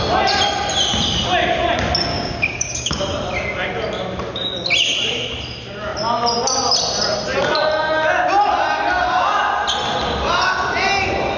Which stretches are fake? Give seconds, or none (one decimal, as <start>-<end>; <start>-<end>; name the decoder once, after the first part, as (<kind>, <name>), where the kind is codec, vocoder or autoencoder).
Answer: 2.1-3.0 (codec, DAC)